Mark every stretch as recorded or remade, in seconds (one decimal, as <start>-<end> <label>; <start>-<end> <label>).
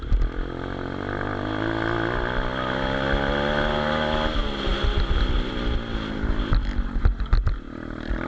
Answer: 0.0-8.3 recorded